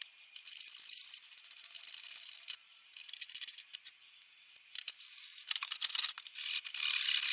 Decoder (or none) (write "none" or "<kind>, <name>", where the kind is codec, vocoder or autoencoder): none